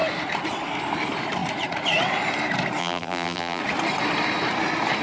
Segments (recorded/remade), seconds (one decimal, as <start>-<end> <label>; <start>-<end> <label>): 0.0-2.8 recorded; 2.8-3.6 remade; 3.6-5.0 recorded